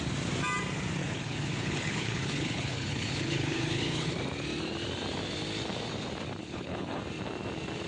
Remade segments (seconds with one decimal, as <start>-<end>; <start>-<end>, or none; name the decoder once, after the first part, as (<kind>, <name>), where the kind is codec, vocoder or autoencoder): 1.0-4.1 (codec, HILCodec); 6.4-7.0